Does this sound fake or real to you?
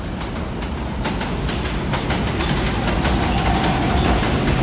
real